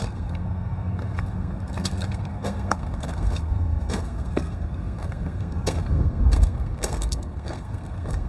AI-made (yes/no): yes